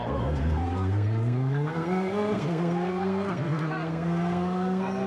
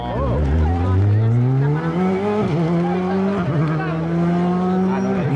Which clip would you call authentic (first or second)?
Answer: second